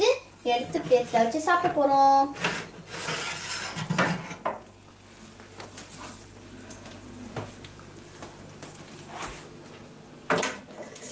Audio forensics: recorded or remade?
recorded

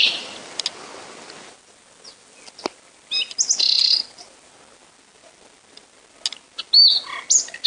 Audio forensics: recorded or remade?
recorded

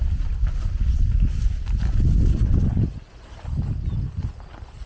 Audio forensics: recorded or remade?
recorded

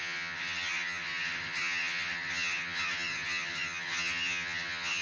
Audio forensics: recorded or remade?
remade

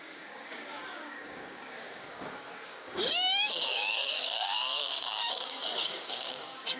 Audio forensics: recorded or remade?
remade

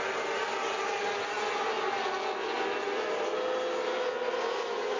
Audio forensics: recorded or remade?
recorded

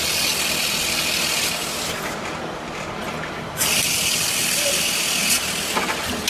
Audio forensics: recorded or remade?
recorded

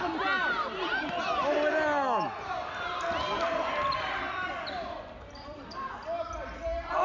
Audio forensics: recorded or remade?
recorded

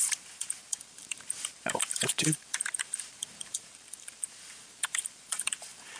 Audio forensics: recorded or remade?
remade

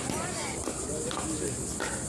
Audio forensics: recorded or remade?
recorded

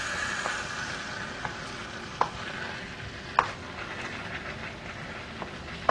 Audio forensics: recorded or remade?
recorded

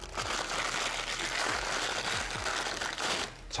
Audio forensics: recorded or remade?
recorded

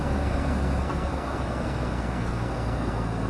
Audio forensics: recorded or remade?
remade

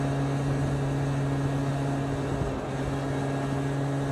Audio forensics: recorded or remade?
recorded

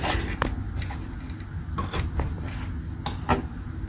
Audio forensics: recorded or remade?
recorded